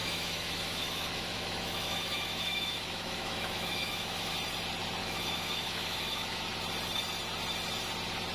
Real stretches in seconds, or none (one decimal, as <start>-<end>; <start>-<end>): 4.3-5.0; 6.4-8.3

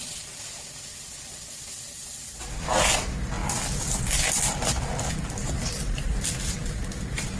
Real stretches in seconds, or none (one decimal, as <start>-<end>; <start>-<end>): 0.0-7.4

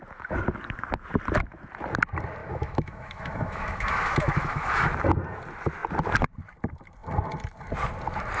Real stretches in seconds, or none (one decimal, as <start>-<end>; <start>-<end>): 0.0-2.4; 4.9-8.4

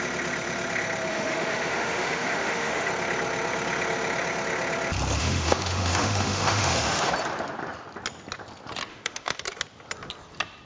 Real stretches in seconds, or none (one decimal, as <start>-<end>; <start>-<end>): 0.0-1.1; 2.9-5.2; 7.1-8.9; 9.4-10.7

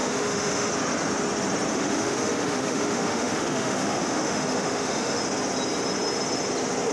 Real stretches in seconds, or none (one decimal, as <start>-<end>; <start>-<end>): 0.7-1.7; 5.2-6.9

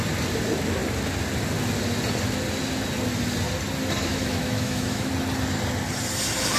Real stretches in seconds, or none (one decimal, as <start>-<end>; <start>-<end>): 0.0-4.1; 5.1-6.6

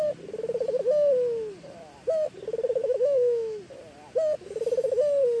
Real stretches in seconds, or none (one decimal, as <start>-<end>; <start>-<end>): 0.0-2.8; 3.6-5.4